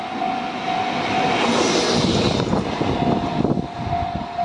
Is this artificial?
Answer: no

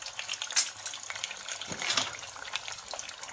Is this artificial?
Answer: no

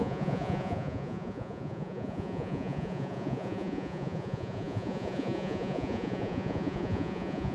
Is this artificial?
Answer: yes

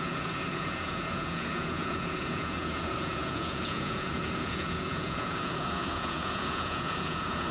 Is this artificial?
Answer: yes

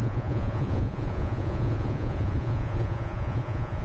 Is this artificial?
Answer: yes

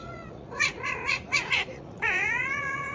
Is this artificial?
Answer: yes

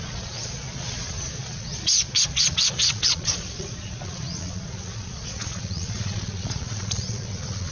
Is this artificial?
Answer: yes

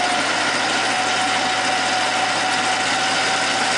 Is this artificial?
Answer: no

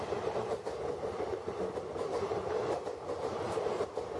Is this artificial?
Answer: no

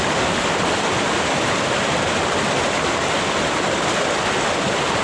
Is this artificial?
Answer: no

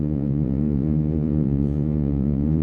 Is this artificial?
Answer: yes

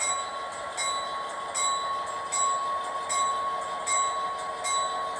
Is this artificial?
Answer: no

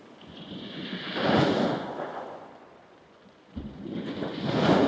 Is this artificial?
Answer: yes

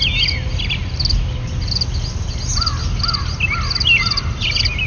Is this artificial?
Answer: no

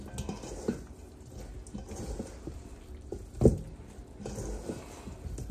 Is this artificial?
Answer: no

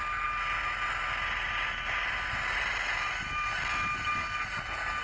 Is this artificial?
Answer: no